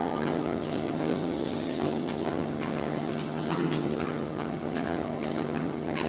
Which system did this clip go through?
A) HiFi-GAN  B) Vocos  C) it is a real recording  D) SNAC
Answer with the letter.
A